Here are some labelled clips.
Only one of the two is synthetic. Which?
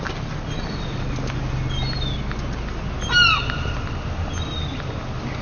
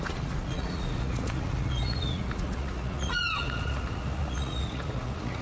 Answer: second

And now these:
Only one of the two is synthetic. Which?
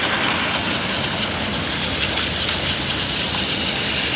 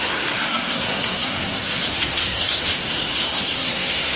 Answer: second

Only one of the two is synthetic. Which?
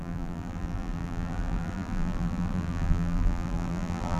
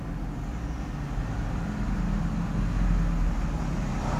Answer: first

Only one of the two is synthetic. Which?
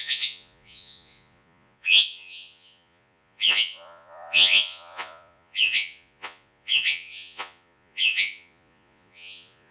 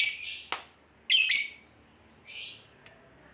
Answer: first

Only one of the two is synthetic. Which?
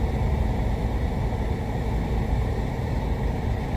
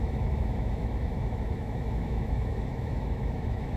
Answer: second